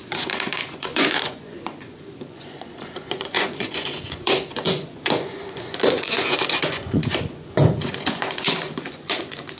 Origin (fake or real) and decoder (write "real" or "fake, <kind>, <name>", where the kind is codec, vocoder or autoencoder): fake, vocoder, Vocos